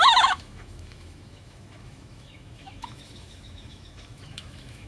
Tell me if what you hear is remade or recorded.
remade